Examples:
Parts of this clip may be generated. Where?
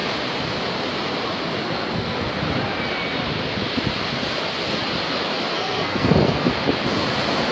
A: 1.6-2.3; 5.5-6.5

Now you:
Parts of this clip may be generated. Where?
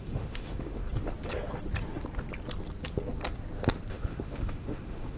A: 0.0-0.8; 3.9-5.2